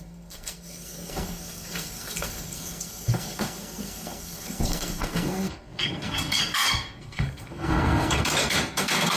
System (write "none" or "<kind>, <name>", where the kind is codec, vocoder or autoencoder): codec, SNAC